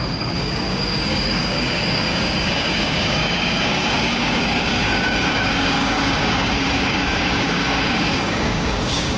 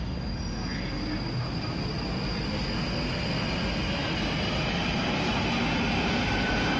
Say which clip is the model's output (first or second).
first